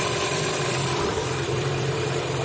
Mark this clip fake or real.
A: fake